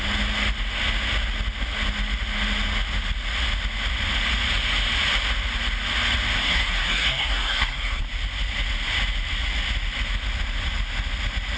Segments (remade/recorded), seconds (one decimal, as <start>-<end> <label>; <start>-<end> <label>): 0.0-6.4 recorded; 6.4-8.0 remade; 8.0-11.6 recorded